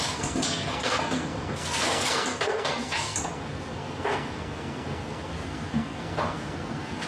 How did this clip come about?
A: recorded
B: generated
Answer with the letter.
B